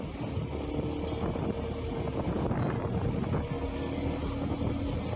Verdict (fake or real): real